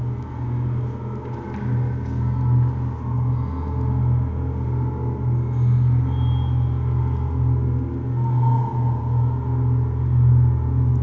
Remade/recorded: recorded